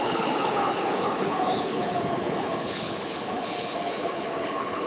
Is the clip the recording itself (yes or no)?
no